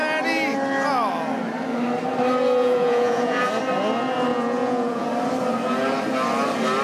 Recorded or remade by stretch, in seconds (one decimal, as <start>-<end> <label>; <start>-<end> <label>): 0.0-2.6 recorded; 2.6-3.5 remade; 3.5-4.3 recorded; 4.3-5.1 remade; 5.1-6.8 recorded